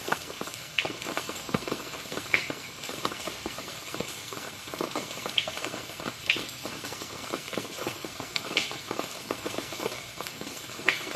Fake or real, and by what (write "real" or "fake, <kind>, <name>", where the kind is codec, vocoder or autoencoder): fake, codec, SNAC